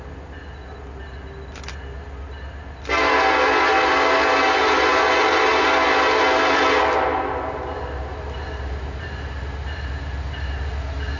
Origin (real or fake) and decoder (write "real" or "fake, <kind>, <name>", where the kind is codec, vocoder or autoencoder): real